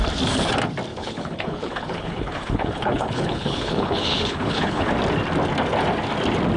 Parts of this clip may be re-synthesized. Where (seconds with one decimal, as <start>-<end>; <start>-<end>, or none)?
0.9-4.9